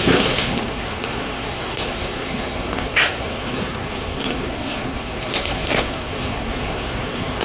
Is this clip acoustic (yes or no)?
no